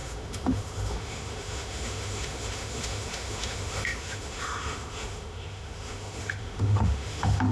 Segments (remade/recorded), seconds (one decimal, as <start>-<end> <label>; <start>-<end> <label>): 0.0-7.5 remade